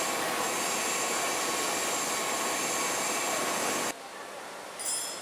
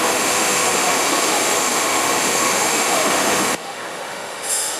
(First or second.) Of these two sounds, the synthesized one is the second